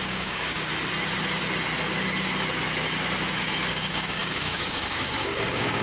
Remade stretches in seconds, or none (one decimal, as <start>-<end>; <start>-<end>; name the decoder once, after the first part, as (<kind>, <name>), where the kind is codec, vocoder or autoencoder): 0.0-0.7 (codec, DAC); 3.7-5.8